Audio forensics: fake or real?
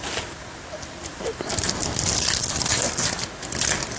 real